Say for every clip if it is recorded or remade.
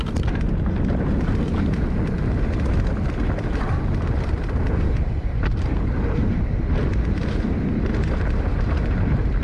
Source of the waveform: recorded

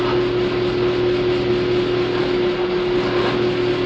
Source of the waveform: recorded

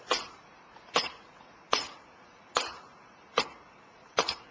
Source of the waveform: remade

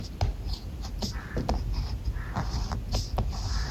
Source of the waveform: recorded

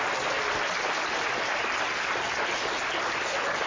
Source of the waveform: recorded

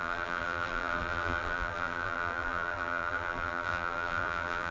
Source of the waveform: remade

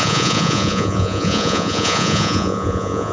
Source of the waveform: remade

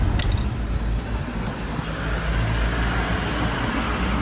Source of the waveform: recorded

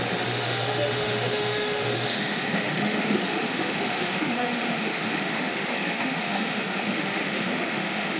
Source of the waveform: remade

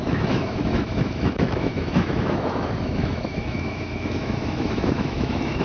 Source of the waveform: remade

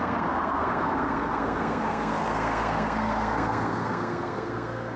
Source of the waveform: remade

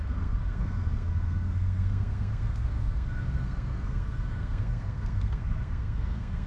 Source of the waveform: remade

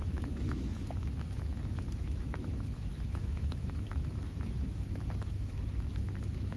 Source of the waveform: remade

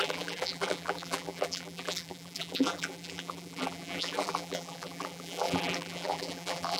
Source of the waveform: remade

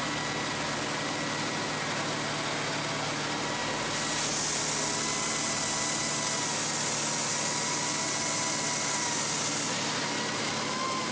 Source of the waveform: recorded